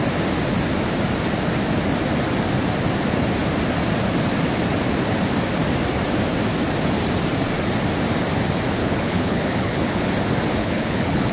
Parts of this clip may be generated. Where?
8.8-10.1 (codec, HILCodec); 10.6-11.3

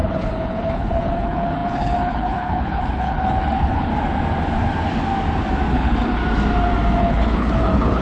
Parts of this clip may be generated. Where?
0.0-3.9 (codec, HILCodec); 5.7-6.2; 7.0-8.0

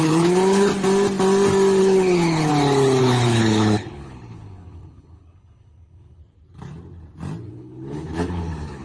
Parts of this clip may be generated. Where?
0.0-0.7 (codec, HILCodec); 1.8-2.5; 3.0-6.2; 7.5-8.8

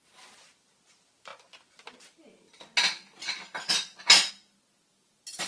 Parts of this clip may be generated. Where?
none

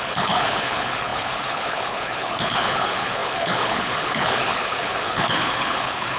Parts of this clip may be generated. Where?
0.0-6.2 (codec, HILCodec)

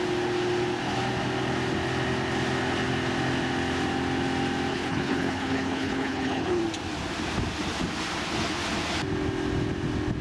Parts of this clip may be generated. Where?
4.7-6.6 (codec, HILCodec)